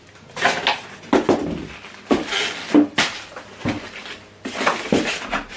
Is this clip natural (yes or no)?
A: yes